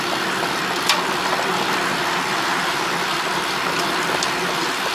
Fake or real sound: real